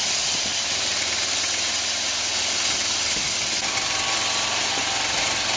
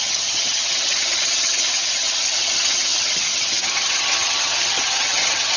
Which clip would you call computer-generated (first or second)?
second